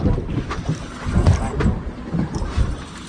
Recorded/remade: recorded